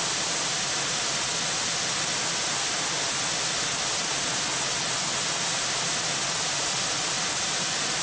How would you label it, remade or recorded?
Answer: recorded